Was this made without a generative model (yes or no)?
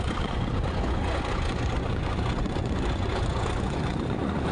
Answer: no